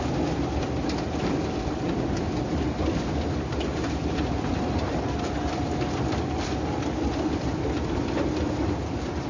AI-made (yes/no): yes